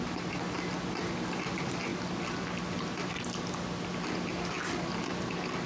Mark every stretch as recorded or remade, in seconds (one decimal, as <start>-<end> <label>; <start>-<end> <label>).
0.0-5.7 recorded